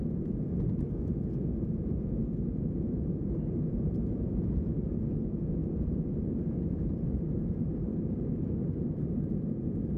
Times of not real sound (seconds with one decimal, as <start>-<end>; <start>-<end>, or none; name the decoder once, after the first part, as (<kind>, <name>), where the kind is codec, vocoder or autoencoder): 0.0-7.9 (vocoder, Vocos); 9.3-10.0

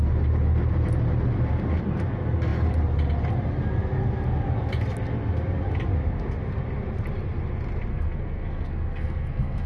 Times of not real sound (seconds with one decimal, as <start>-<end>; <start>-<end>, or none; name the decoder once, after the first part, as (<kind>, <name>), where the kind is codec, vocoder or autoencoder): 7.9-9.7 (codec, SNAC)

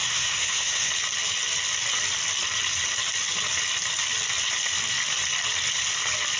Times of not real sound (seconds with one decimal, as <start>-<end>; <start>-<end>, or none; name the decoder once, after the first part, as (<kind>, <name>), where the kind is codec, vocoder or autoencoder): 0.0-0.9 (codec, SNAC)